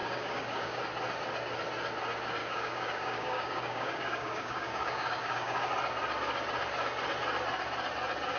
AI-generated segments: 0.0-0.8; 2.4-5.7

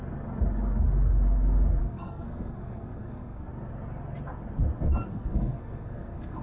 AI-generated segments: 1.8-3.5; 5.1-6.4

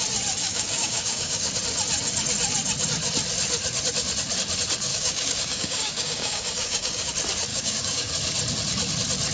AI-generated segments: 0.4-1.5; 4.9-7.1; 7.5-8.1

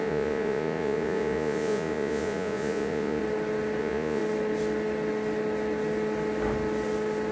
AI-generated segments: 0.0-3.2; 3.8-4.2

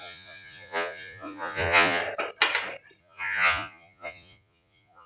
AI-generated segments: 0.0-2.0; 3.0-5.1